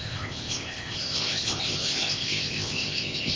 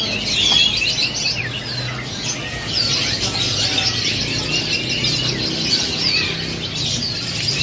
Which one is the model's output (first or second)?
first